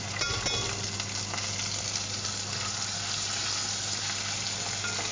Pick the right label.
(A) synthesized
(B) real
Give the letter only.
B